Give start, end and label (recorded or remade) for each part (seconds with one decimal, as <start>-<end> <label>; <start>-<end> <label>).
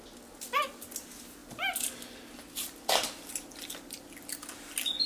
0.0-5.1 recorded